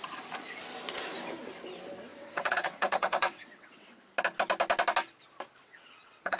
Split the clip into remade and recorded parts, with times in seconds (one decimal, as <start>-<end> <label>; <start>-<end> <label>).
0.0-2.1 recorded; 2.1-3.9 remade; 3.9-5.6 recorded; 5.6-6.4 remade